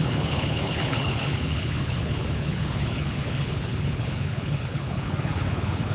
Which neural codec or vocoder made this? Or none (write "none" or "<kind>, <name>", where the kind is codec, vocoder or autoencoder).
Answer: codec, HILCodec